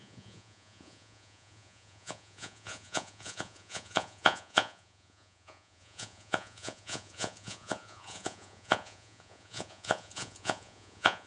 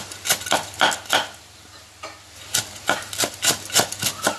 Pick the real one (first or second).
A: second